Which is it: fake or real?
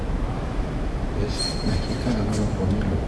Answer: real